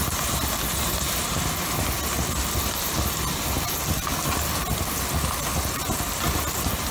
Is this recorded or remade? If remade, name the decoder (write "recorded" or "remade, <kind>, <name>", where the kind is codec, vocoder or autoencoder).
recorded